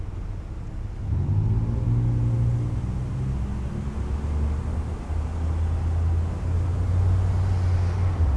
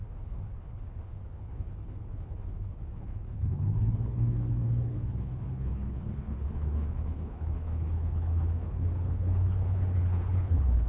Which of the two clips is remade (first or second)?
second